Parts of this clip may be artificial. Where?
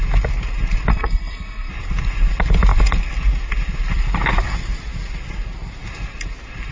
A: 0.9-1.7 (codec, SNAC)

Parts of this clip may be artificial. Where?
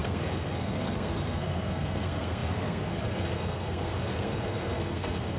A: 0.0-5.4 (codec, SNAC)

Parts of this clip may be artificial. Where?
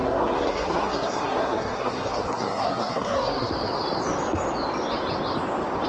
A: 0.0-3.5 (codec, SNAC)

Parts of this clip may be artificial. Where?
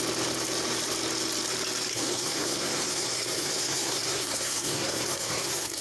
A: 1.9-5.8 (codec, SNAC)